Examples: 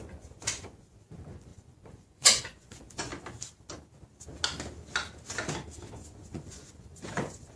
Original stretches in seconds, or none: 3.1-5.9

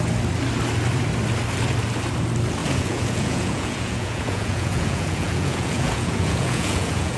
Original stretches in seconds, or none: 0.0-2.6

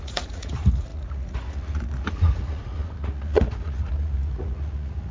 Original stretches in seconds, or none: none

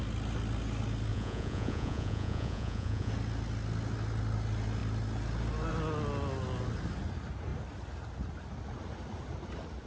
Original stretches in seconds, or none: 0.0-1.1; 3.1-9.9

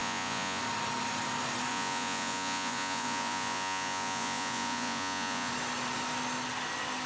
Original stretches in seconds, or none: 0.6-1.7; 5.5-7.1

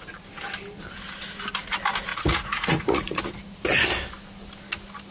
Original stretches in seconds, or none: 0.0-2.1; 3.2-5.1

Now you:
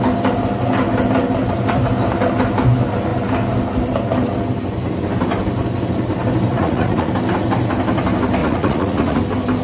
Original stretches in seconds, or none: 0.0-6.5; 7.1-8.4; 9.2-9.6